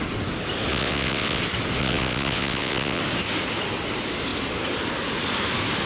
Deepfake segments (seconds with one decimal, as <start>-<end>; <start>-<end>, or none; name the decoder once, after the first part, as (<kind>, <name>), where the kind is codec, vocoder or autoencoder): 0.7-1.4 (vocoder, WaveNeXt); 1.8-3.0